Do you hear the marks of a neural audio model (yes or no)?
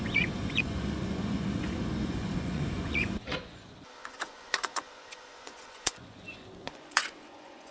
yes